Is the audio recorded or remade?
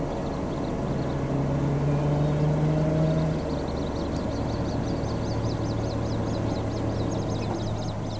recorded